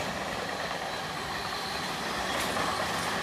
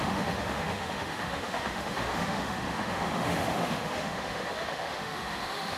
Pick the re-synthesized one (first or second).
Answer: second